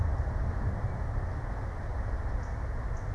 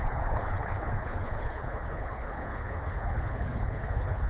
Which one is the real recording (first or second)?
first